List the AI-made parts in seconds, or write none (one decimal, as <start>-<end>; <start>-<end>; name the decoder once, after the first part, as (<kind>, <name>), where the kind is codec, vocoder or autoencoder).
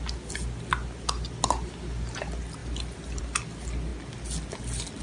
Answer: none